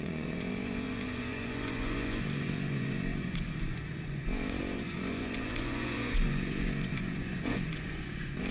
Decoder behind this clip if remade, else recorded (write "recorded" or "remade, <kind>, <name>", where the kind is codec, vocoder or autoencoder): remade, vocoder, Vocos